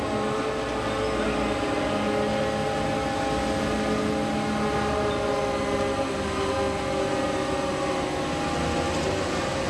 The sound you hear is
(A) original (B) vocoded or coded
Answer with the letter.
A